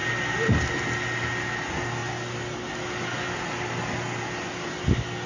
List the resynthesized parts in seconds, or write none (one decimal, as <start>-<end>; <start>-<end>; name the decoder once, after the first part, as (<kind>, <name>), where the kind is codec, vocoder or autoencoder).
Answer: none